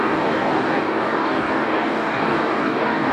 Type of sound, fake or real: fake